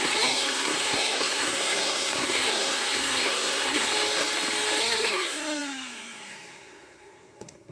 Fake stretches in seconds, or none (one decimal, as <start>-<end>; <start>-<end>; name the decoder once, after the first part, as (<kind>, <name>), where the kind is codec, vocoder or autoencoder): 0.0-3.9 (codec, SNAC); 4.8-7.7